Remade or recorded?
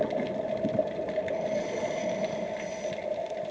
recorded